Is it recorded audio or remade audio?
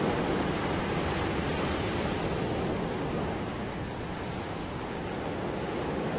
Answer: recorded